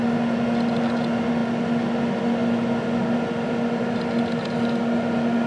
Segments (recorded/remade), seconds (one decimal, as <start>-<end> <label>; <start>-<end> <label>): 0.0-5.5 recorded